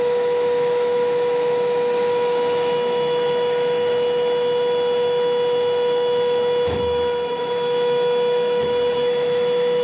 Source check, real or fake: fake